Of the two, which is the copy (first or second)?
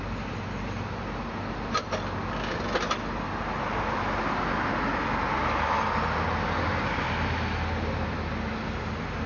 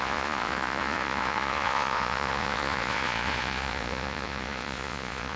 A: second